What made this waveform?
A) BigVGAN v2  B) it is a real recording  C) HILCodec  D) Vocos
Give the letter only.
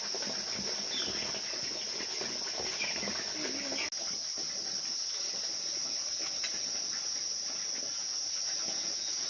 B